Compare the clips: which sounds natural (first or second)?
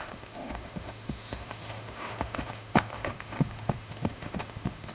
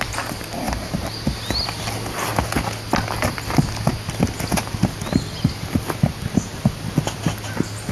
second